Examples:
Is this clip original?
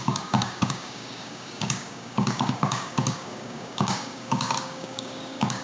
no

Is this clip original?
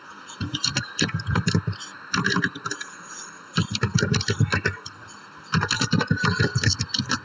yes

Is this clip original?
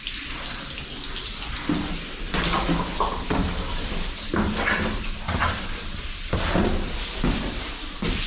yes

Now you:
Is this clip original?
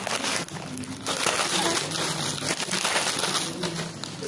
yes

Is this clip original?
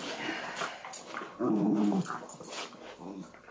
yes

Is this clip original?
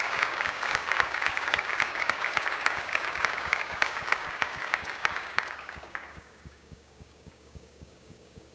no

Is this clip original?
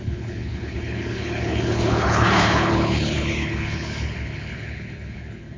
no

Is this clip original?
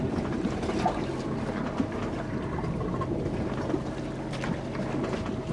yes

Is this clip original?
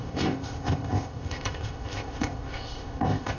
no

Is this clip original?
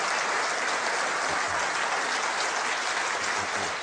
yes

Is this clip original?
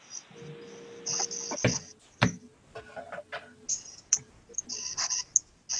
yes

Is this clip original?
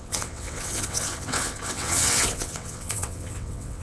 no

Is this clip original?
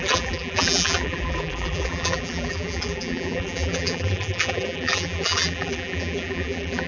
no